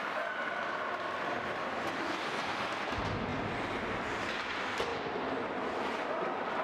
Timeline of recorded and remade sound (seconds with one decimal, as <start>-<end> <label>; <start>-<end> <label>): 0.0-6.6 recorded